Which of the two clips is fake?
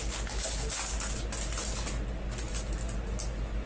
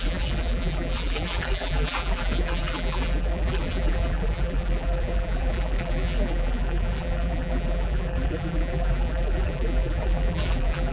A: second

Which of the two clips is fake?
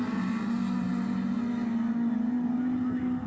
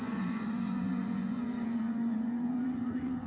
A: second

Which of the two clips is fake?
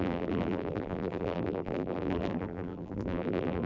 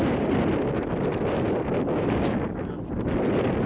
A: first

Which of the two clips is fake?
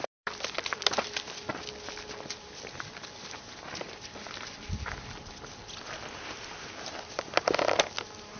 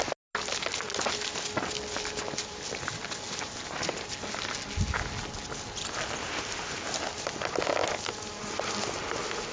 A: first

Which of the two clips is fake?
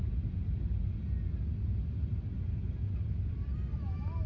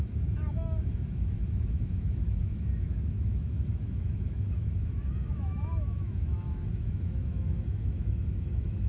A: second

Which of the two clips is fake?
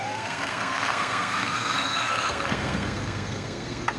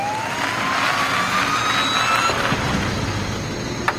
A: first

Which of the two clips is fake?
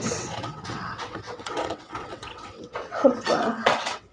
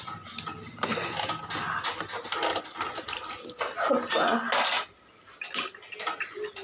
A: first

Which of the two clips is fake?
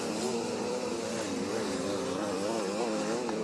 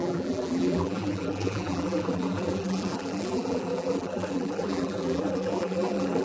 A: second